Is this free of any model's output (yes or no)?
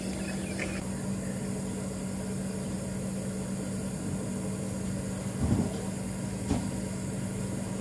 yes